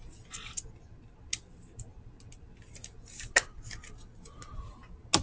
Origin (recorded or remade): recorded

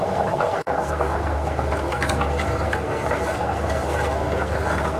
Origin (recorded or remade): remade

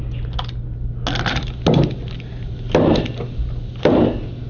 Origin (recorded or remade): recorded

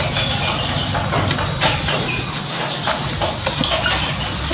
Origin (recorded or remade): recorded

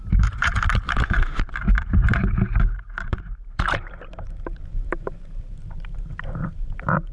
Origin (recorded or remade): remade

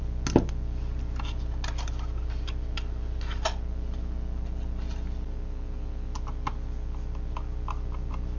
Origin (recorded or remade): recorded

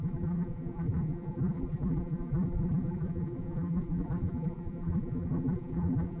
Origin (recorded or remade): remade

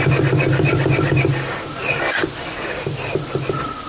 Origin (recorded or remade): recorded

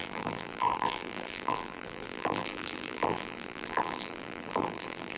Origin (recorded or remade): remade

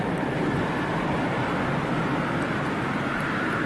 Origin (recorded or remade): recorded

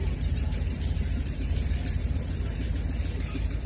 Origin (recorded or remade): remade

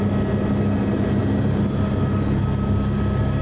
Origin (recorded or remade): recorded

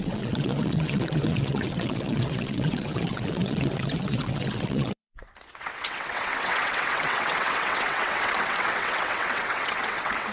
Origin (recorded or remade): remade